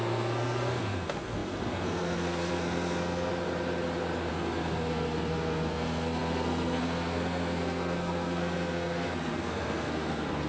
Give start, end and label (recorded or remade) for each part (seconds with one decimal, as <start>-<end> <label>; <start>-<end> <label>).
0.0-3.3 remade; 3.3-4.3 recorded; 4.3-10.5 remade

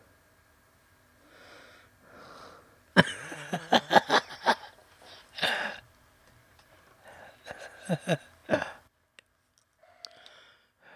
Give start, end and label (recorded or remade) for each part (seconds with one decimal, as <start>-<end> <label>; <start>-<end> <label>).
0.0-4.8 recorded; 4.8-6.7 remade; 6.7-8.4 recorded; 8.4-9.1 remade; 9.1-11.0 recorded

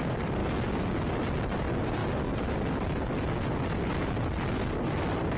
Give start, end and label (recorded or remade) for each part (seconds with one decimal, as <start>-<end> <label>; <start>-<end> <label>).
0.0-0.4 remade; 0.4-1.6 recorded; 1.6-2.0 remade; 2.0-4.8 recorded; 4.8-5.4 remade

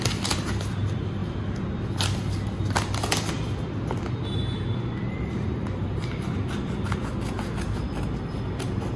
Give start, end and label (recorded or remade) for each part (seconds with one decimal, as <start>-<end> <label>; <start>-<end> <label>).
0.0-9.0 recorded

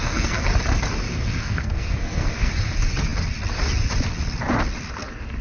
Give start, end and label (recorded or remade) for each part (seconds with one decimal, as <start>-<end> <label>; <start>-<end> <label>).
0.0-0.5 remade; 0.5-1.1 recorded; 1.1-2.5 remade; 2.5-5.4 recorded

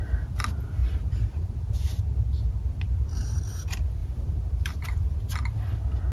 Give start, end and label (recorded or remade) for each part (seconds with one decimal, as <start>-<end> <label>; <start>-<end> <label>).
0.0-0.8 recorded; 0.8-3.4 remade; 3.4-4.0 recorded; 4.0-5.2 remade; 5.2-6.1 recorded